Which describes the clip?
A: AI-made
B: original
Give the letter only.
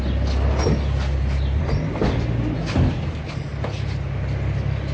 B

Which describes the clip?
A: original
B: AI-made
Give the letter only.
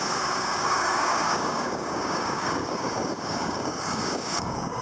B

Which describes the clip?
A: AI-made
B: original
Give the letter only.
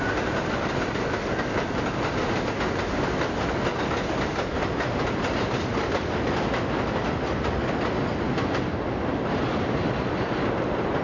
B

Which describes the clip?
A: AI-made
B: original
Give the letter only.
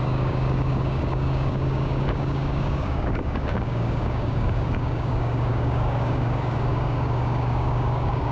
A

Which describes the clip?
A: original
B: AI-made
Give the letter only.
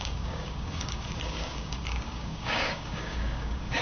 B